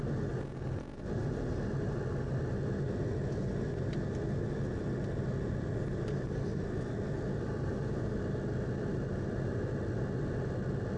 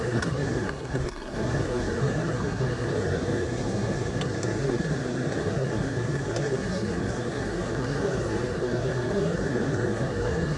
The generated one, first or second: second